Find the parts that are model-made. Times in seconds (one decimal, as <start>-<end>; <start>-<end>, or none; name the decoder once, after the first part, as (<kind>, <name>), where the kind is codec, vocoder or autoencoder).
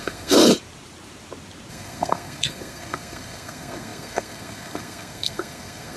0.0-0.5 (codec, SNAC); 1.7-6.0